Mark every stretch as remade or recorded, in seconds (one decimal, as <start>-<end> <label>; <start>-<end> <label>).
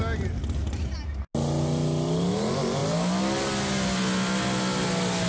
0.0-5.3 recorded